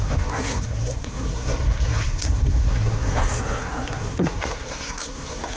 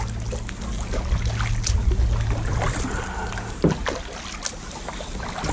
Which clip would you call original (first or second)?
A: second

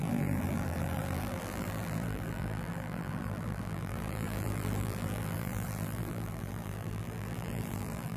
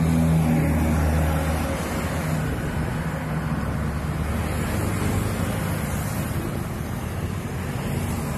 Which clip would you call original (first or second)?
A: second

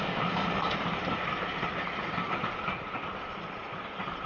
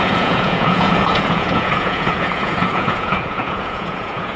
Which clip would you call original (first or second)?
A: first